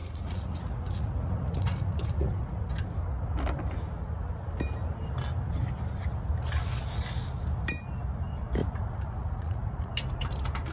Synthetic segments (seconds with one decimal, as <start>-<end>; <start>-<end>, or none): 0.0-2.6; 8.6-9.9